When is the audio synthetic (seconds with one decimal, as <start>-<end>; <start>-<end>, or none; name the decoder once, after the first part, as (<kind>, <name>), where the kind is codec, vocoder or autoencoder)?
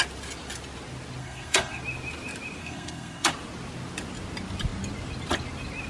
1.2-1.8 (codec, SNAC); 2.6-3.3